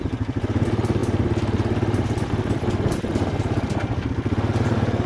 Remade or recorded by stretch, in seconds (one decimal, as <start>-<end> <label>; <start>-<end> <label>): 0.0-5.1 recorded